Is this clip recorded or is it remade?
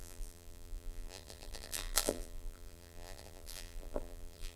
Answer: remade